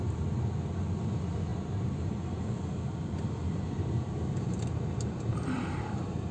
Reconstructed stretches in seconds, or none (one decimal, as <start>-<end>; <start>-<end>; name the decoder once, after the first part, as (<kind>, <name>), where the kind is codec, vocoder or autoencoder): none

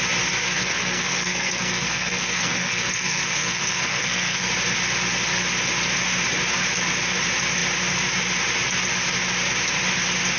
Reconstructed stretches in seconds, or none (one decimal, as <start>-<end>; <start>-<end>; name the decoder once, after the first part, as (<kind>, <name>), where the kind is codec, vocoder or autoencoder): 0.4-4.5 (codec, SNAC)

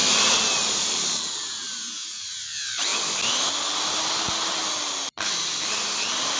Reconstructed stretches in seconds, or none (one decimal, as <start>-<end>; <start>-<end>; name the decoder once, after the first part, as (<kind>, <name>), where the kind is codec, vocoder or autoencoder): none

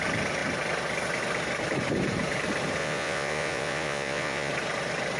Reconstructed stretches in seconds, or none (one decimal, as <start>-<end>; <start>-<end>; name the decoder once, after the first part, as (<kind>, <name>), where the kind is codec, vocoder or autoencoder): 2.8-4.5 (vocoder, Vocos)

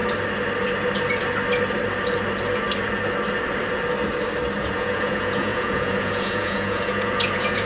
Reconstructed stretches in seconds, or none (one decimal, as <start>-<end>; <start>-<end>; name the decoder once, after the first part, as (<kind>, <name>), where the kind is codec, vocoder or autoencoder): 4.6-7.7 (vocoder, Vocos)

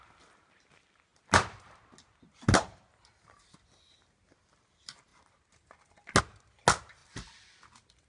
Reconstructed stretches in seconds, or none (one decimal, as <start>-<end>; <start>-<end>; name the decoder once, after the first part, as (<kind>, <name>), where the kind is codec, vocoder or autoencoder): 1.1-1.8 (vocoder, BigVGAN v2); 7.0-7.6

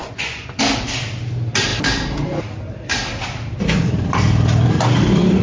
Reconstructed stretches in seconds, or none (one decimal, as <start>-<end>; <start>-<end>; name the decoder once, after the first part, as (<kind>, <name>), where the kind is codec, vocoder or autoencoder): 0.0-0.6 (vocoder, Vocos)